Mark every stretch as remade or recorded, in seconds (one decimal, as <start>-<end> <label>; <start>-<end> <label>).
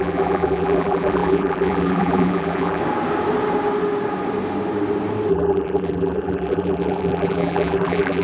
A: 0.0-2.8 remade; 2.8-5.3 recorded; 5.3-8.2 remade